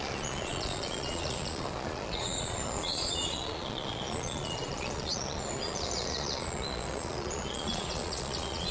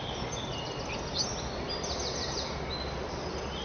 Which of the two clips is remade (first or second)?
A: first